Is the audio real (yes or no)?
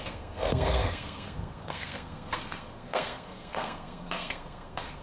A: no